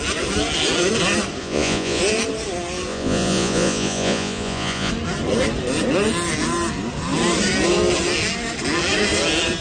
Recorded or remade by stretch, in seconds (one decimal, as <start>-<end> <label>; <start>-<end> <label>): 0.0-1.4 recorded; 1.4-2.0 remade; 2.0-2.9 recorded; 2.9-4.9 remade; 4.9-9.6 recorded